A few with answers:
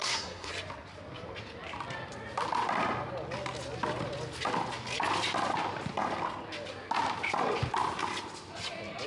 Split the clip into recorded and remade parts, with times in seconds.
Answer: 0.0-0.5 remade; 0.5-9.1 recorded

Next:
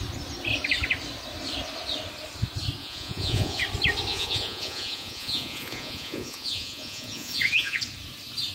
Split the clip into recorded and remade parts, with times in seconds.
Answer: 0.0-2.8 recorded; 2.8-3.6 remade; 3.6-4.1 recorded; 4.1-7.8 remade; 7.8-8.5 recorded